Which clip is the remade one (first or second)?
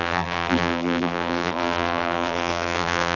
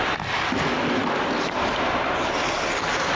first